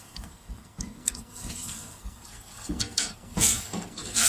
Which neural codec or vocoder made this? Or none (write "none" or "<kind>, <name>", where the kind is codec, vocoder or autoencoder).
codec, SNAC